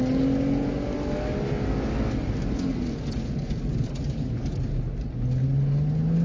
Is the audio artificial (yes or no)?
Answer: no